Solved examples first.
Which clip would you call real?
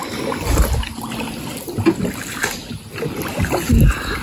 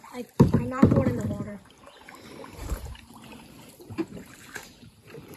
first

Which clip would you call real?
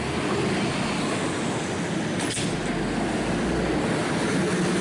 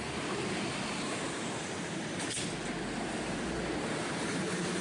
first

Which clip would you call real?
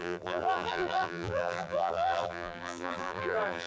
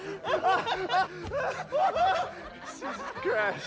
second